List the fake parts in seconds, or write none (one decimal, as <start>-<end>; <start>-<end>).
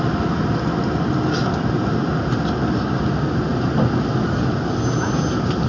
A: none